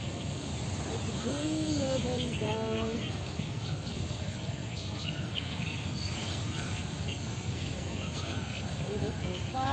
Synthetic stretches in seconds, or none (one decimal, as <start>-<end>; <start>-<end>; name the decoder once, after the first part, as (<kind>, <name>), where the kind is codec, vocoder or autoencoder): 0.0-0.5 (codec, SNAC); 1.1-9.7